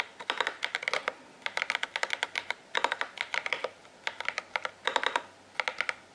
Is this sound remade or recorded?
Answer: recorded